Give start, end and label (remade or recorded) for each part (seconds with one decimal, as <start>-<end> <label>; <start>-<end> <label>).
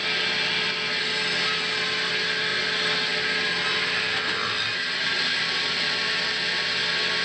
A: 0.0-7.2 recorded